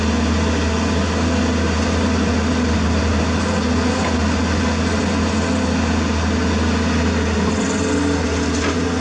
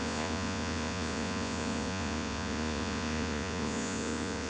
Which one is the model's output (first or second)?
second